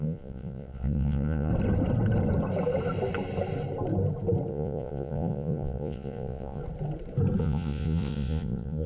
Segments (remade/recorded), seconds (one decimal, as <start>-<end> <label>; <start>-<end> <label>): 0.0-1.5 remade; 1.5-4.5 recorded; 4.5-6.6 remade; 6.6-7.4 recorded; 7.4-8.9 remade